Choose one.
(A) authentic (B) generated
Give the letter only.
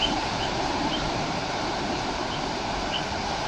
B